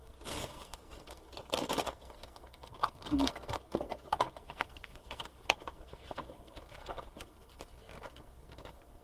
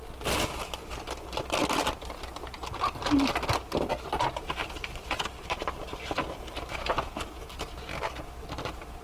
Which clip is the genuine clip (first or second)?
second